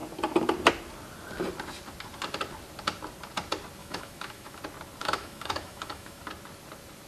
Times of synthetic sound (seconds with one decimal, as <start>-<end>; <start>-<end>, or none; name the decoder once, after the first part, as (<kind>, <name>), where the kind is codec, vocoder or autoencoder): 3.8-4.6 (autoencoder, DAC-VAE); 5.0-6.2